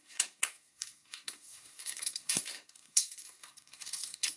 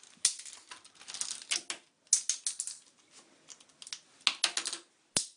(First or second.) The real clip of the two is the second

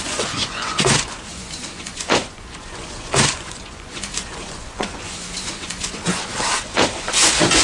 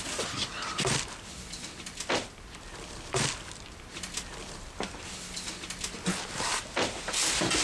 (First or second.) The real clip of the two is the second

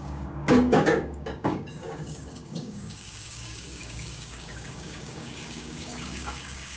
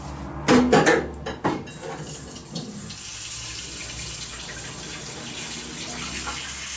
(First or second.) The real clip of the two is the second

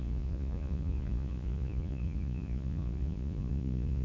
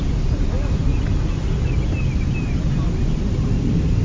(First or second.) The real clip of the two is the second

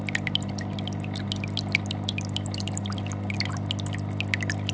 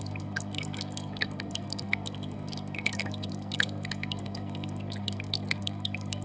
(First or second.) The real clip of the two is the first